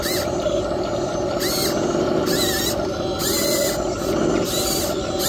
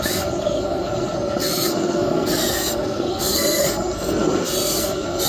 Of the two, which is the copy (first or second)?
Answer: second